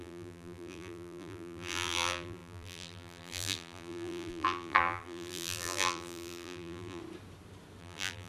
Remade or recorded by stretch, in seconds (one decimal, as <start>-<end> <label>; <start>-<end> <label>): 0.0-7.0 remade; 7.0-7.8 recorded; 7.8-8.3 remade